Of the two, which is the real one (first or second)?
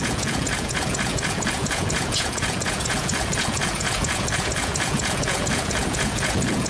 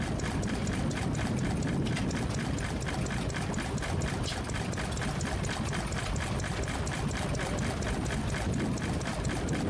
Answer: second